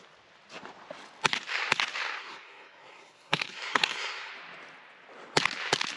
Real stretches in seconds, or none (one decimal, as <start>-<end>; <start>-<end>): 0.0-2.2; 4.3-6.0